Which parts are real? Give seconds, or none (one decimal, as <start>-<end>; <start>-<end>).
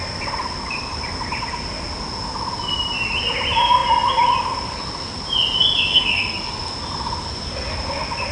0.0-5.9; 6.5-8.3